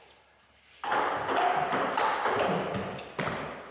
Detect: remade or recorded recorded